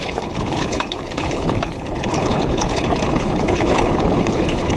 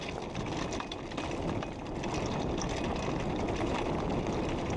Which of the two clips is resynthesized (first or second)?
first